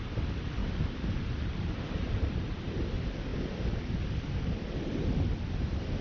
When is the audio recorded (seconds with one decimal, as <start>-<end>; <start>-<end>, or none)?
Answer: 0.0-0.6; 2.9-6.0